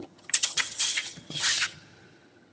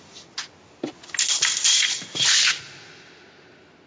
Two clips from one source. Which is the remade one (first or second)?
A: first